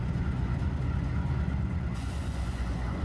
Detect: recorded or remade remade